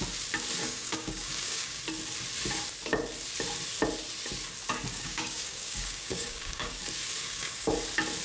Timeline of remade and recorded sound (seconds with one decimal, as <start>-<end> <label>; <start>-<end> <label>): 0.0-0.6 recorded; 0.6-1.8 remade; 1.8-4.9 recorded; 4.9-6.8 remade; 6.8-7.2 recorded; 7.2-7.7 remade; 7.7-8.2 recorded